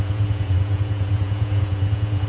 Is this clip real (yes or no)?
no